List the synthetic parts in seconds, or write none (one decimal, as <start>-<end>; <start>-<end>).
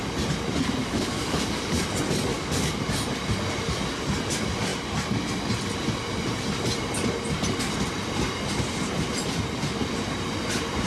0.8-1.8; 2.3-2.8